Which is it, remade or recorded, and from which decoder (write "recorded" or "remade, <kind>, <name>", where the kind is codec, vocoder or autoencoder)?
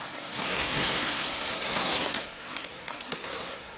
remade, codec, SNAC